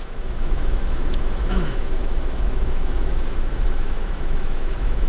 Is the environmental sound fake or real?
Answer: fake